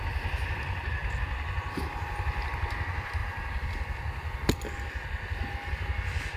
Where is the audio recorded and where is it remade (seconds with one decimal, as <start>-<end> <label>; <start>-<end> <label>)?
0.0-6.4 recorded